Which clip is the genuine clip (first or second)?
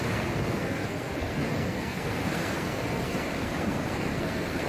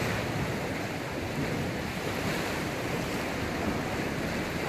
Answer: second